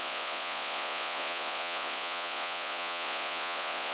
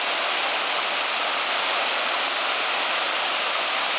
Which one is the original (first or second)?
second